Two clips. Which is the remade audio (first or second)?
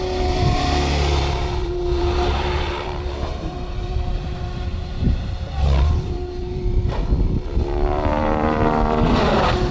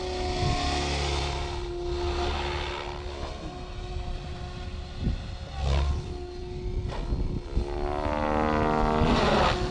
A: first